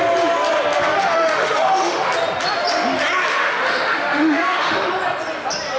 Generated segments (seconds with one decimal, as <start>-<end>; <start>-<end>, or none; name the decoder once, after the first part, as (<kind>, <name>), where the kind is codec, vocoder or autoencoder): 1.0-2.1 (autoencoder, DAC-VAE); 3.3-4.9

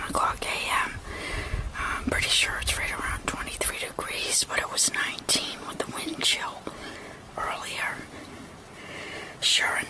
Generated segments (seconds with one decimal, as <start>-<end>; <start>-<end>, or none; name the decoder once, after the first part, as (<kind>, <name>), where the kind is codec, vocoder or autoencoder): none

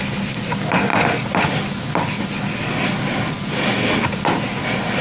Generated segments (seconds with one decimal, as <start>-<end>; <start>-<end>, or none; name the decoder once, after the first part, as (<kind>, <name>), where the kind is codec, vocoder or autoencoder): none

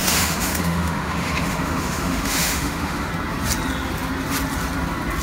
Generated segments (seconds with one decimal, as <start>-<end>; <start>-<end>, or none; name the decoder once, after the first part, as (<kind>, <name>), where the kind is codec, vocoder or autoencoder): 0.0-3.1 (autoencoder, DAC-VAE)

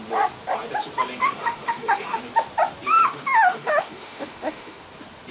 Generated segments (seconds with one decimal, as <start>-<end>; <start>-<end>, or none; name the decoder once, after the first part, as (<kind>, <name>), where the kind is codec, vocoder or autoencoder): 1.2-2.2 (autoencoder, DAC-VAE); 3.0-4.8